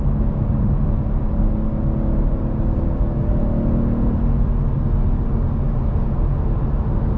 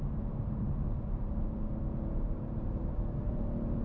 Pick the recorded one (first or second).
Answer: first